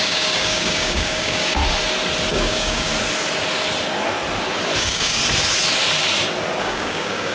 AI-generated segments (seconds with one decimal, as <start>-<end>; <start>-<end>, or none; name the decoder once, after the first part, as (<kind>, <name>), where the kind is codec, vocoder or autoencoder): 0.0-1.6 (codec, DAC); 2.3-2.9; 4.8-5.2; 6.6-7.3